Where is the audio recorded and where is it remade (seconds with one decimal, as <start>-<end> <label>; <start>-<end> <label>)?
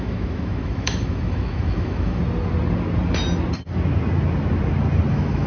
0.0-2.2 remade; 2.2-5.1 recorded; 5.1-5.5 remade